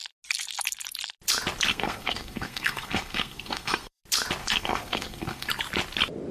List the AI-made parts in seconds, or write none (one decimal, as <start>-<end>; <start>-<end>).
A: 1.7-4.0; 4.4-5.5